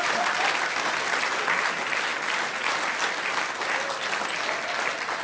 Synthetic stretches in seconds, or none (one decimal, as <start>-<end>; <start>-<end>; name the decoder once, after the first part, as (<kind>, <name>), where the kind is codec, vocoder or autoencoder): none